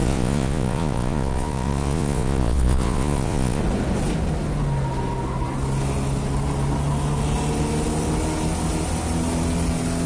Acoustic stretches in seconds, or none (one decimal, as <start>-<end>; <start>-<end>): 3.6-10.1